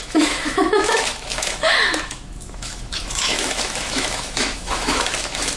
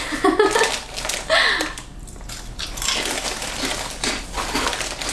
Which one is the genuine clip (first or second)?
second